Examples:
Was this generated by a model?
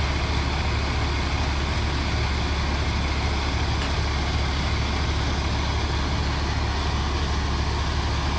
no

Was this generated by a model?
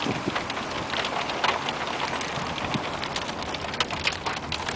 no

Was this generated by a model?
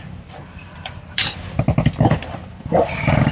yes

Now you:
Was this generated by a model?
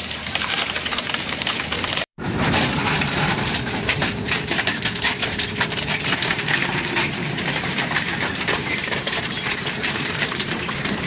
yes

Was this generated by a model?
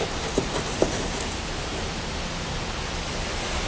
no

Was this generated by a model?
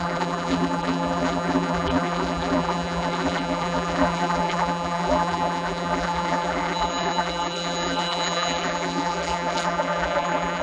yes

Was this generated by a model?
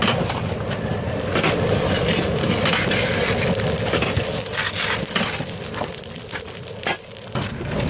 no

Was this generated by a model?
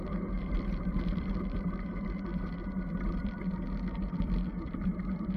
yes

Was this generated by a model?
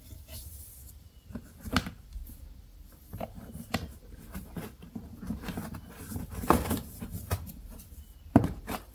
yes